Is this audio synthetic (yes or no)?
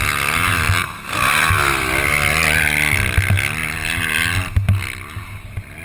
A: no